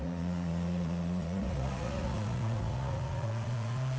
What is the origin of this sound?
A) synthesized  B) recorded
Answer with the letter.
A